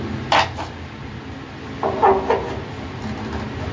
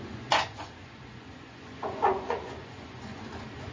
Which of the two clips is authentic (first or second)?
first